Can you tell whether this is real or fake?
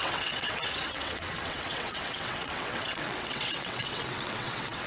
fake